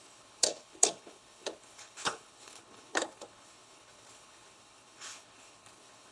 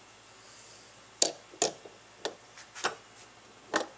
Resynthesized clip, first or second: first